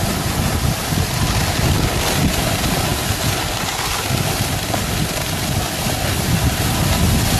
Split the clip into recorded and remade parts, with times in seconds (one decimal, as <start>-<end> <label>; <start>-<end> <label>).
0.0-7.4 recorded